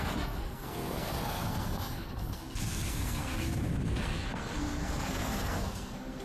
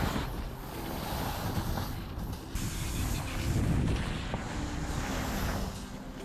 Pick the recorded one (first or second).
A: second